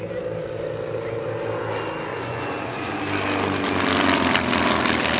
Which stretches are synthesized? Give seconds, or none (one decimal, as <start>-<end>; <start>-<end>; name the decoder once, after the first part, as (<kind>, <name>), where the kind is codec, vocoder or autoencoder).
2.1-2.9 (vocoder, Vocos)